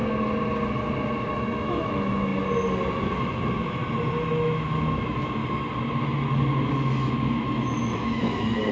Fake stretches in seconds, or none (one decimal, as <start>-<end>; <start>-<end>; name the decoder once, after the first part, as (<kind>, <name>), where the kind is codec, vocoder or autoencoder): 1.3-2.3 (autoencoder, DAC-VAE); 3.0-3.8; 4.3-5.4; 6.6-8.7